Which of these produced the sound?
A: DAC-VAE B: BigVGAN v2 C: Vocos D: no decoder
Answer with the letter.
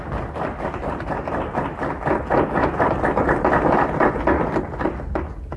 D